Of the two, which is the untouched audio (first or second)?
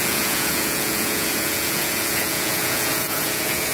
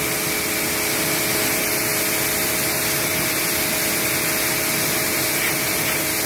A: second